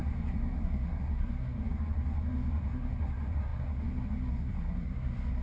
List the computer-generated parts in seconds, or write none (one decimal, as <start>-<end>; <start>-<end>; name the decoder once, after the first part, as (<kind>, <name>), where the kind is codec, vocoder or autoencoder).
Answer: 0.0-5.4 (codec, SNAC)